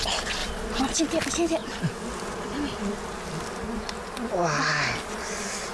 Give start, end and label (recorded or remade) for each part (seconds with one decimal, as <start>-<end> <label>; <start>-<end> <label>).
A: 0.0-5.7 recorded